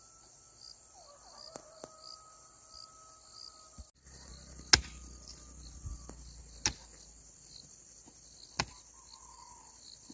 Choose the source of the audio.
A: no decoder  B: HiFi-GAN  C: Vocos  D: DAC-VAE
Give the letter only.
A